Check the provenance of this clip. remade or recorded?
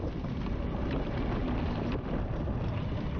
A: recorded